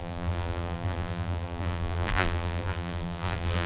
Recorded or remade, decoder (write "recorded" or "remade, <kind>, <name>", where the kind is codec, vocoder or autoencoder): remade, vocoder, BigVGAN v2